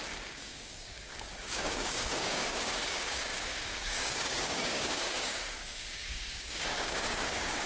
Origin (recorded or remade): remade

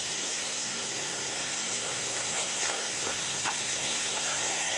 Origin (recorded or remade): remade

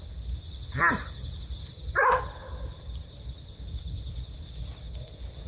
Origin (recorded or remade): recorded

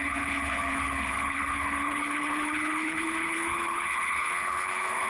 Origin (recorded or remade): remade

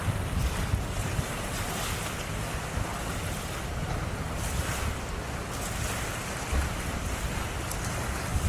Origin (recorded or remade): recorded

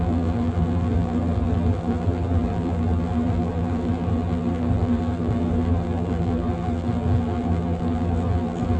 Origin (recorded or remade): remade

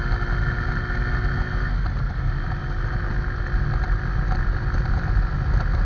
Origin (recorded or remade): recorded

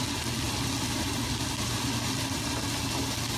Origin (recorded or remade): recorded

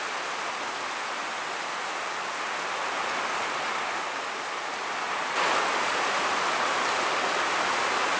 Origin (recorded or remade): recorded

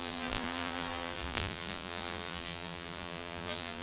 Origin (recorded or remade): remade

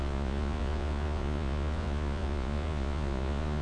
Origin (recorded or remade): remade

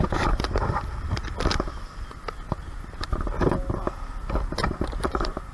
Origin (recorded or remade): recorded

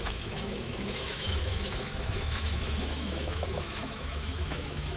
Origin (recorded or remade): remade